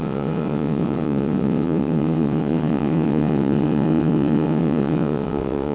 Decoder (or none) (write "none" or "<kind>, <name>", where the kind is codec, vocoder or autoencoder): vocoder, WaveNeXt